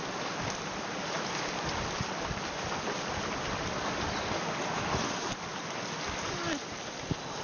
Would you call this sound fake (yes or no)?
no